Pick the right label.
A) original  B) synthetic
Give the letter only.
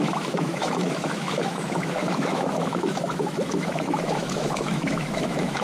B